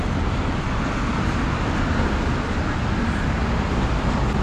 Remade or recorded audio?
recorded